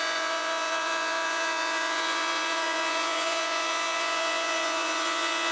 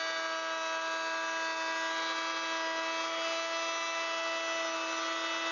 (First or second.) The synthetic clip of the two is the first